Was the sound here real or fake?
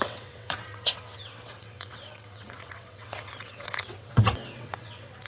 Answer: fake